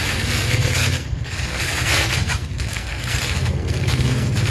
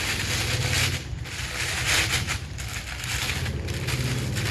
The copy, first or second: first